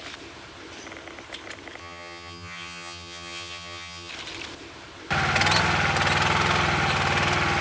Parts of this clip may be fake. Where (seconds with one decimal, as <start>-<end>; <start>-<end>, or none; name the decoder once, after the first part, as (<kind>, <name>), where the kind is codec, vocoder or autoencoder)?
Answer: 1.8-4.1 (vocoder, HiFi-GAN)